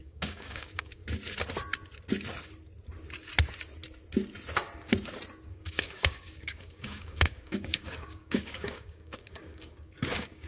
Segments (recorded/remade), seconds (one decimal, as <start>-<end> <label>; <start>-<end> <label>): 0.0-1.0 remade; 1.0-5.5 recorded; 5.5-10.5 remade